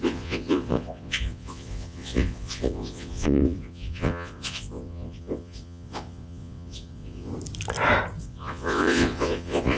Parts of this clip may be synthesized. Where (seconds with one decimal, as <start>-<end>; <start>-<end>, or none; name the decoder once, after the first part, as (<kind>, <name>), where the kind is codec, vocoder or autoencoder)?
0.0-7.3 (vocoder, Vocos); 8.2-9.8